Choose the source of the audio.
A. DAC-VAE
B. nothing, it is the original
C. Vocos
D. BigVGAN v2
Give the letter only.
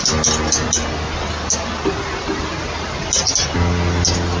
B